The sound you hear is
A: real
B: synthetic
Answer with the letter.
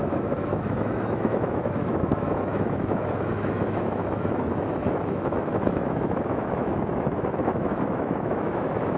B